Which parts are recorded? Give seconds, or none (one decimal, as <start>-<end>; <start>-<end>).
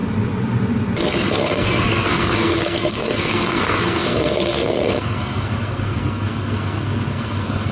0.0-1.0